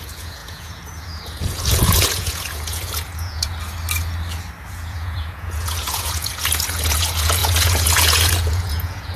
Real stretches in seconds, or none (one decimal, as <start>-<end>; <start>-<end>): 3.5-4.7